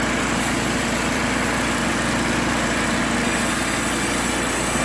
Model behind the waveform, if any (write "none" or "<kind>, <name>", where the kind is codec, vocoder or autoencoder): none